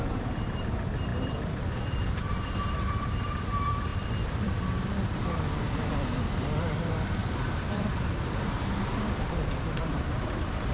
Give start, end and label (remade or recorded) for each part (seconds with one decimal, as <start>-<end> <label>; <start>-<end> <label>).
0.0-10.7 remade